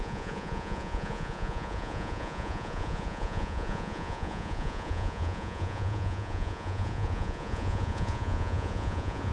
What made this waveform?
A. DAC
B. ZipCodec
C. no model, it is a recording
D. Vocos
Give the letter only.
D